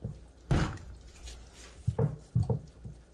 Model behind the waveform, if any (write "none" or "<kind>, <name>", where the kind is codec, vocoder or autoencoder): none